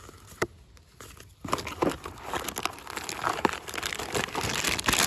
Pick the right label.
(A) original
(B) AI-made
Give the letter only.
A